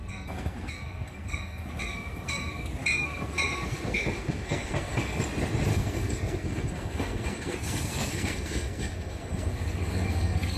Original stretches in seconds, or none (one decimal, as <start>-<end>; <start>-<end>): 5.2-5.7